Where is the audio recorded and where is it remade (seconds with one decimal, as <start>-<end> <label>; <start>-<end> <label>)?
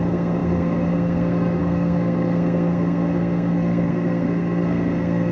0.0-5.3 remade